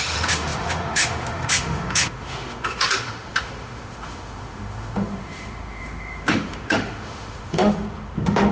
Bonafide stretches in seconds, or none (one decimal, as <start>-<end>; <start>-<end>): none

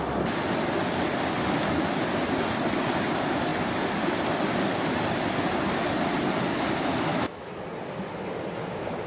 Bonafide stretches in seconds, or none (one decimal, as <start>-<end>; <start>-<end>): 0.0-7.1; 7.6-9.1

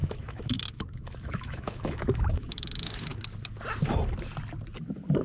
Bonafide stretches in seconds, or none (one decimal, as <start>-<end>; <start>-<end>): 3.1-5.2

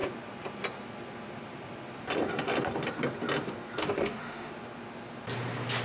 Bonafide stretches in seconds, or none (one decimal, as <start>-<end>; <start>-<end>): 0.0-3.8; 4.5-5.8